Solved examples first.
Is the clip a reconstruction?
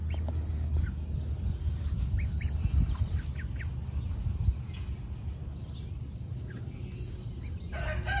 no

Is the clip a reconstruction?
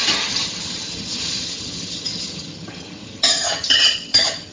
yes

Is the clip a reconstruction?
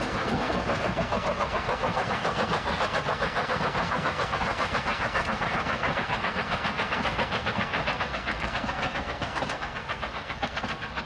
yes